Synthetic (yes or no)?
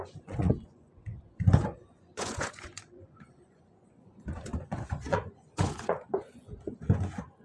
yes